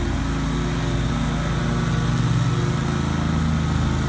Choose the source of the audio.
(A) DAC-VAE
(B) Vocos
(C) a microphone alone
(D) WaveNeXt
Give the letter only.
C